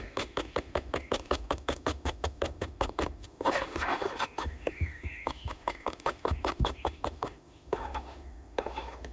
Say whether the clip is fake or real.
fake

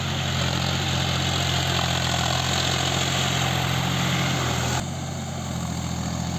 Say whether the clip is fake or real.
real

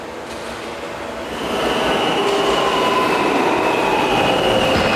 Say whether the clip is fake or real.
real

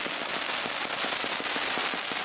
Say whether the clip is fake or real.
real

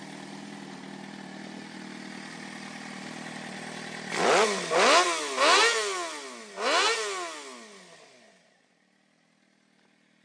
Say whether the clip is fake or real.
real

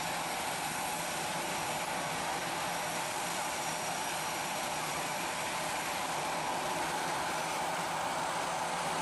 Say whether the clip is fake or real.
fake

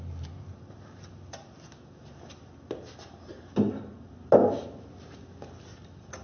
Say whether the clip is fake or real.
real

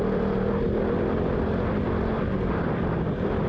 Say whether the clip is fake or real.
real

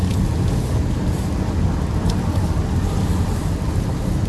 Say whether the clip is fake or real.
real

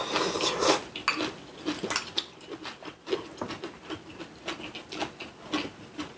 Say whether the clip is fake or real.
real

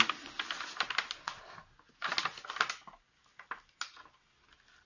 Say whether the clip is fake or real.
real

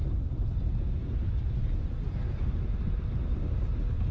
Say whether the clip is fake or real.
real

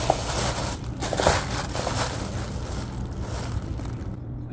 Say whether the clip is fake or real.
real